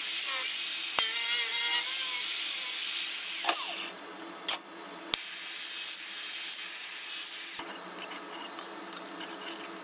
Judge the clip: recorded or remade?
recorded